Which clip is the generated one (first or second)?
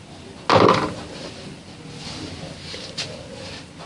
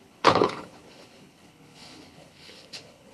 second